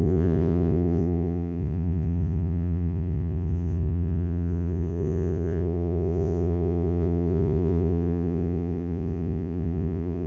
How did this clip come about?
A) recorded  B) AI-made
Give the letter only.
B